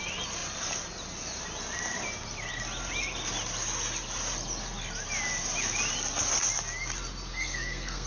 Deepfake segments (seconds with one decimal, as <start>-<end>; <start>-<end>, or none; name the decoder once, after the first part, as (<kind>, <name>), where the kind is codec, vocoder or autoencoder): 7.3-8.1 (codec, SNAC)